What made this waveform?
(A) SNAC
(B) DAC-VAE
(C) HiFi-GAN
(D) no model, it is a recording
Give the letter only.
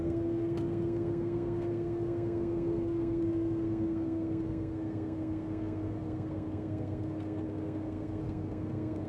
A